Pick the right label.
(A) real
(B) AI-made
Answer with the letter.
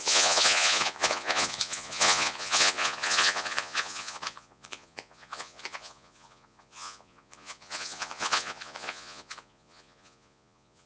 B